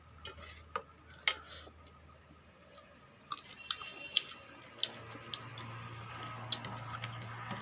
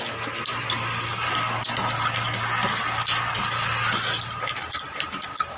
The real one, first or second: first